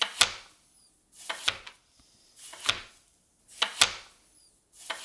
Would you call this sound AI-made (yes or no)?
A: no